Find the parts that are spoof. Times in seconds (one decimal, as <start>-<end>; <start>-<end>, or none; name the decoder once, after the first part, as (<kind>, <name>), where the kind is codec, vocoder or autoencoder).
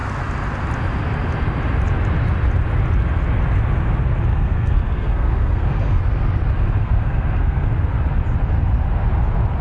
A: 4.3-6.0 (codec, SNAC); 6.8-7.7